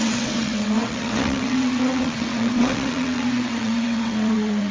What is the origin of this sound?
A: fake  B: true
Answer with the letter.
A